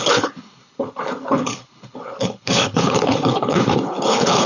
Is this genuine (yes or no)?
no